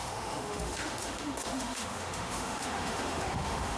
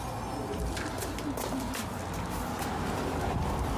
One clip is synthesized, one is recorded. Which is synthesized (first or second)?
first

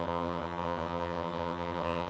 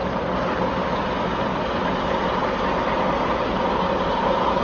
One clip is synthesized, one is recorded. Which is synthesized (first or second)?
first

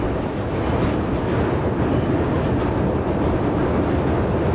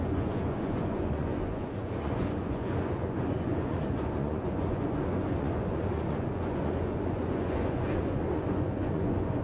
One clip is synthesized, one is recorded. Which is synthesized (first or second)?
second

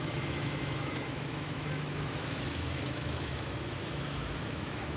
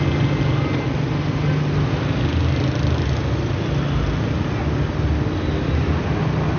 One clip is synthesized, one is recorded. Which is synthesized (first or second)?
first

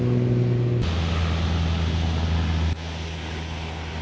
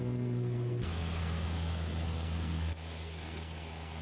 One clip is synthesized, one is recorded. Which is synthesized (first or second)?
second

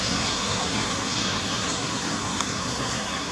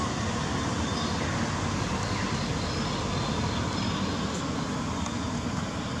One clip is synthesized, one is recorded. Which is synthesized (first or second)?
first